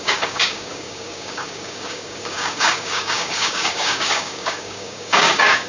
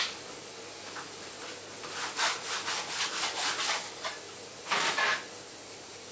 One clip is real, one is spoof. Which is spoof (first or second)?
first